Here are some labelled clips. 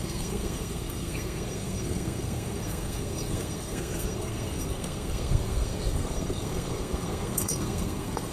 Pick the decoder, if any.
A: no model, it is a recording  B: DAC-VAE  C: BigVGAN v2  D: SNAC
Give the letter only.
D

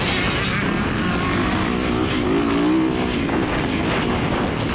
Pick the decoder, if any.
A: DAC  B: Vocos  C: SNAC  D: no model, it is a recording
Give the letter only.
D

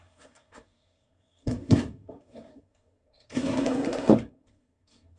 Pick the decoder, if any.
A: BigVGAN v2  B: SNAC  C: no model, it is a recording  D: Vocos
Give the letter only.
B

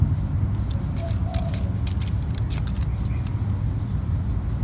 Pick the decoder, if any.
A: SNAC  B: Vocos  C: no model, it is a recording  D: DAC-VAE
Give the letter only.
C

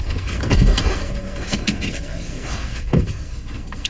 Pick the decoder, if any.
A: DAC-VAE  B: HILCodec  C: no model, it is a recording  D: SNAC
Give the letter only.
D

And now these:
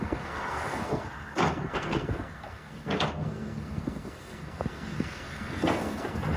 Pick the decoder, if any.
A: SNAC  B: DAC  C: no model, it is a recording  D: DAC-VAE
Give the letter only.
A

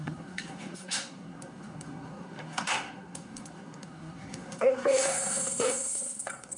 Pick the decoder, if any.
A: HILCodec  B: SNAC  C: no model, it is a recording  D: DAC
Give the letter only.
B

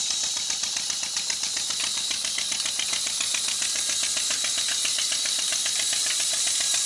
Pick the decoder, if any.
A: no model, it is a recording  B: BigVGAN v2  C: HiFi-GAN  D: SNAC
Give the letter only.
A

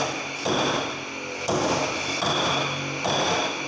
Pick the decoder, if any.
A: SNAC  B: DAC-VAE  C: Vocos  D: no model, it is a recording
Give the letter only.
D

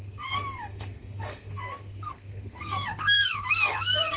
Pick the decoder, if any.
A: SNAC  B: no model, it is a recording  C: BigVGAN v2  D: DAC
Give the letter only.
A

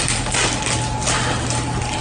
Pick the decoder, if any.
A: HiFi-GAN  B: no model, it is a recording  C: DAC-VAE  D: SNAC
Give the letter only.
B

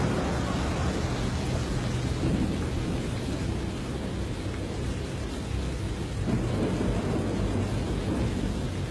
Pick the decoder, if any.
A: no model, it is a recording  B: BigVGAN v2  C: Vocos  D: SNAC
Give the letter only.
A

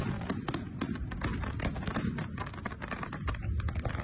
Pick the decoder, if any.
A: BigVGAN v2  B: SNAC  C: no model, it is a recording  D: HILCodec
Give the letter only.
C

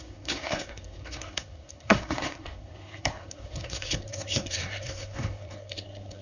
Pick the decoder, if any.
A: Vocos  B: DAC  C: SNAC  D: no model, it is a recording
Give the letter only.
C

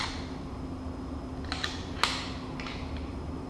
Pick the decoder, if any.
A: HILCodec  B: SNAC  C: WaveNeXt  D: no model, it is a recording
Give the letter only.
D